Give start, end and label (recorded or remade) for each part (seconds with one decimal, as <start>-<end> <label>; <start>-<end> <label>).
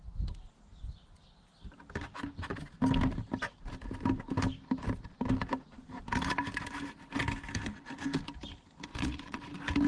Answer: 0.0-8.9 recorded; 8.9-9.4 remade; 9.4-9.9 recorded